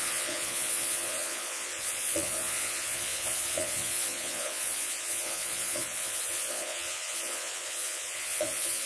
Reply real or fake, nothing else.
fake